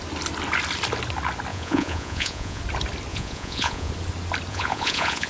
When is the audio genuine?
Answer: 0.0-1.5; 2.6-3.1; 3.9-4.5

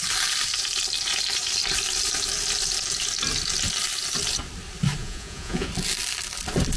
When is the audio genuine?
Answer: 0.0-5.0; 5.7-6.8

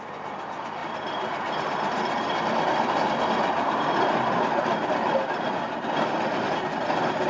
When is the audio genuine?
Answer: 0.0-7.3

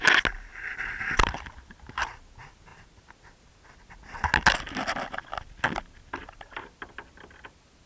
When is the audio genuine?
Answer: 0.0-7.9

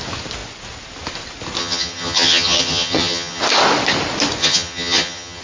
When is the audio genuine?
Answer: 0.0-1.6; 3.4-4.4

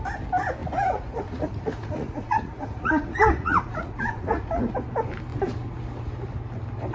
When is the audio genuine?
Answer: 0.0-0.6; 4.5-6.9

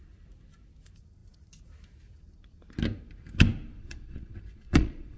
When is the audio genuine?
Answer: 0.0-3.8